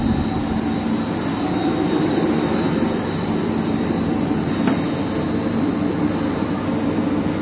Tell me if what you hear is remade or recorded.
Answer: remade